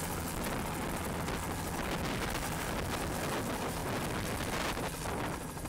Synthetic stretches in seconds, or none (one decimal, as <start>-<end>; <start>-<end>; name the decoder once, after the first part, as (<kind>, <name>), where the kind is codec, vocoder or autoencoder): none